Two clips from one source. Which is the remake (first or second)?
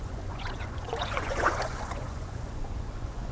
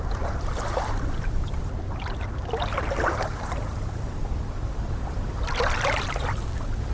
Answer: first